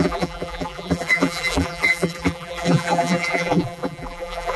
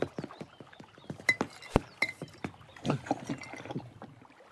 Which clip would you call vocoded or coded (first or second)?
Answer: first